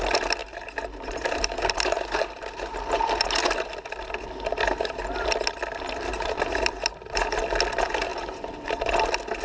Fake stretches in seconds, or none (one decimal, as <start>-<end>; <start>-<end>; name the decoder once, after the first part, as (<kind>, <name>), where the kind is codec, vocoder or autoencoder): 0.4-3.7 (vocoder, BigVGAN v2); 6.1-6.7; 8.1-8.9